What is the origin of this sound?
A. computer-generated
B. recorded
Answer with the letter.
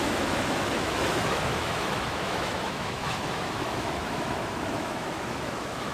A